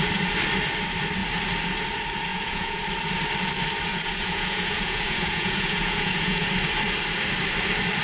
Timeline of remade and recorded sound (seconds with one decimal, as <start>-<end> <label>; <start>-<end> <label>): 0.0-2.3 recorded; 2.3-2.8 remade; 2.8-3.9 recorded; 3.9-6.5 remade; 6.5-8.0 recorded

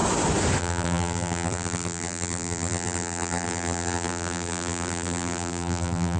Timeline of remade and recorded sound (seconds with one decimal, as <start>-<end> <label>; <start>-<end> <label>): 0.0-0.6 recorded; 0.6-6.2 remade